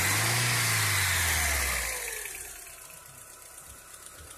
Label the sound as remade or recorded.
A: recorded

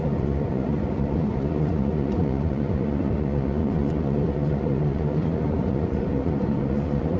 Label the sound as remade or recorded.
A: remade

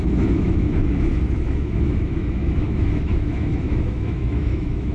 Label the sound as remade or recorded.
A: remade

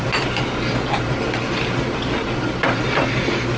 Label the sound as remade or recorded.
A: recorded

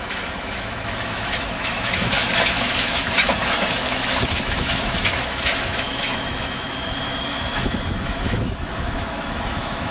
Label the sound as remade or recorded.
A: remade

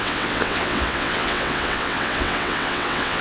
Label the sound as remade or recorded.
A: remade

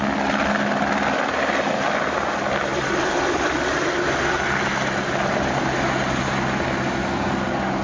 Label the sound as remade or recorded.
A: recorded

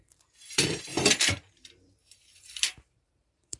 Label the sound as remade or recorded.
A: remade